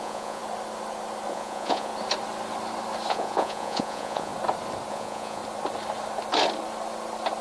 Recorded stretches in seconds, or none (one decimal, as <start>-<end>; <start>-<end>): 0.4-1.3; 1.9-3.1; 4.3-4.9; 5.4-7.4

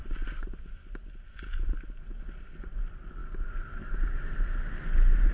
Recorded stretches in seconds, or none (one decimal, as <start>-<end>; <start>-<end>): 0.0-5.3

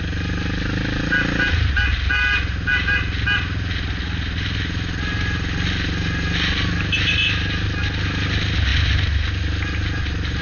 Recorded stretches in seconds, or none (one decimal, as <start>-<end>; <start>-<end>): 0.0-10.4

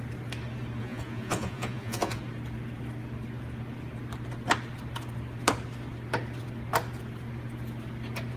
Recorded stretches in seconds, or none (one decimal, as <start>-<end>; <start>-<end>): 0.0-0.8; 2.2-8.4

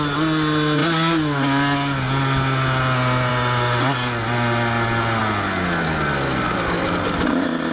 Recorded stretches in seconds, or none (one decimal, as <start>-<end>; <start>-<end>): 0.0-7.7

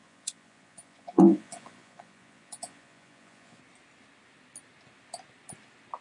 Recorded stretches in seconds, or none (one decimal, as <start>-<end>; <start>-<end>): 3.6-6.0

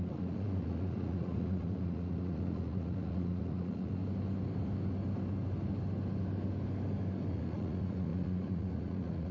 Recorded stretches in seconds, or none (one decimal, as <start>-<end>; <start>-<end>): 4.0-7.3